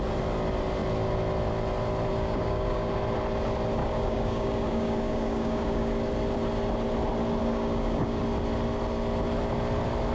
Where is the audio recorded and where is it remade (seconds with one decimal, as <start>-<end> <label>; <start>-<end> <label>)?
0.0-2.1 recorded; 2.1-2.9 remade; 2.9-3.8 recorded; 3.8-5.9 remade; 5.9-7.4 recorded; 7.4-8.2 remade; 8.2-10.1 recorded